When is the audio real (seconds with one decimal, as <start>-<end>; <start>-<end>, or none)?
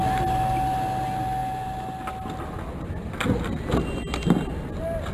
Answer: 0.0-5.1